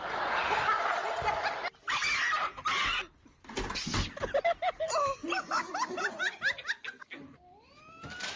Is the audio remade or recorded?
recorded